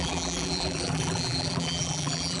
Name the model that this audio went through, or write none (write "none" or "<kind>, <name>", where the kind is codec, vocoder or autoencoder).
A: vocoder, BigVGAN v2